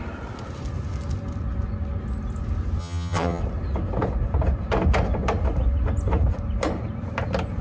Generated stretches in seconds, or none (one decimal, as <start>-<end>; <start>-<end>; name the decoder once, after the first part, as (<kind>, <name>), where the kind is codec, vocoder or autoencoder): 2.8-3.4 (vocoder, HiFi-GAN)